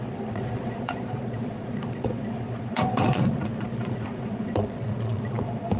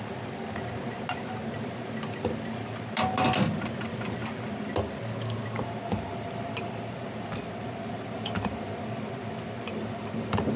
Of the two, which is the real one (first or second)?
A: second